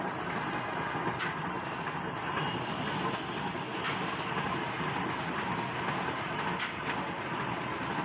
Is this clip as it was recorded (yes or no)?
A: yes